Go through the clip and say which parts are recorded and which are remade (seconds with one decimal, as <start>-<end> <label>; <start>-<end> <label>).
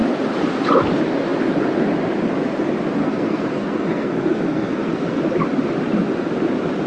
0.0-3.0 recorded; 3.0-5.2 remade; 5.2-6.9 recorded